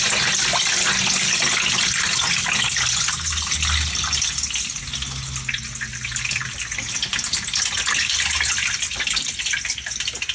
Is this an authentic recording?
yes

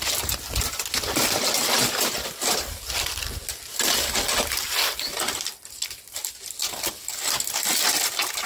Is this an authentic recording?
yes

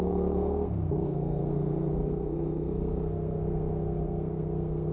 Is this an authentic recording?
no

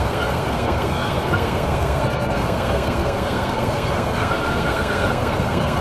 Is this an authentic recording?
no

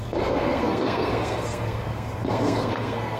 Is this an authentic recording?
no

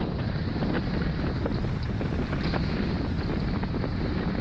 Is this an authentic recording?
yes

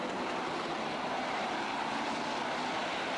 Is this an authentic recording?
yes